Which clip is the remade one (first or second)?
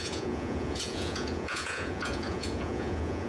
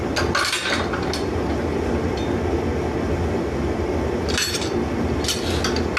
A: first